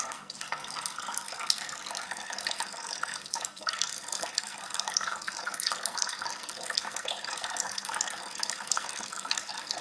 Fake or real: fake